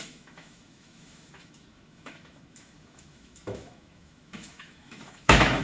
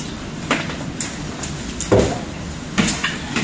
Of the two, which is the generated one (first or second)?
first